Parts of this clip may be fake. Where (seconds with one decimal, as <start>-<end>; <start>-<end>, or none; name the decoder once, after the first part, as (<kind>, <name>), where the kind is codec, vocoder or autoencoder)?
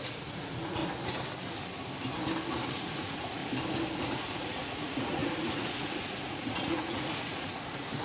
0.0-0.8 (vocoder, Vocos); 2.8-3.4; 4.1-8.0